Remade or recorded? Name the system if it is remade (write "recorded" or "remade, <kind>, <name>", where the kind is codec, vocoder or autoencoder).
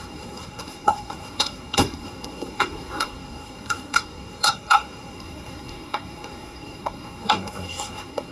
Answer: remade, codec, SNAC